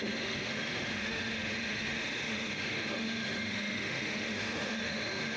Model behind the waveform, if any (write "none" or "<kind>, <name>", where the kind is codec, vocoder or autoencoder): autoencoder, DAC-VAE